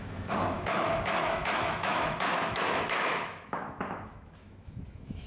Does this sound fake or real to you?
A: fake